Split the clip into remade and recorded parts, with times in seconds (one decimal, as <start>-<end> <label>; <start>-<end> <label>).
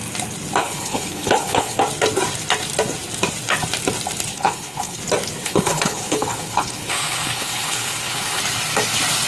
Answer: 0.0-0.6 recorded; 0.6-1.8 remade; 1.8-4.3 recorded; 4.3-5.0 remade; 5.0-5.4 recorded; 5.4-8.4 remade; 8.4-9.3 recorded